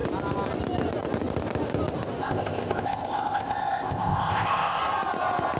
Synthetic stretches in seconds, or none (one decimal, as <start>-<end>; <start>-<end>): 2.2-4.8